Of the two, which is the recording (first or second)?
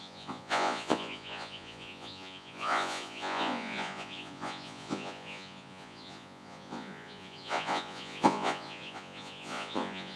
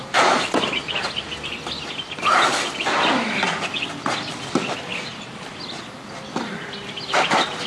second